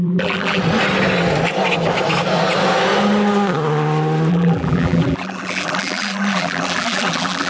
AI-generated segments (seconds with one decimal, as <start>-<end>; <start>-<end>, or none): 0.0-0.6; 4.3-7.5